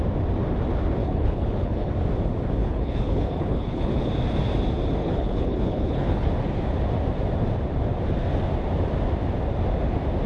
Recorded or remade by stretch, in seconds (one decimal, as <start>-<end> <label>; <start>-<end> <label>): 0.0-1.0 recorded; 1.0-1.9 remade; 1.9-2.6 recorded; 2.6-4.1 remade; 4.1-5.0 recorded; 5.0-6.3 remade; 6.3-10.3 recorded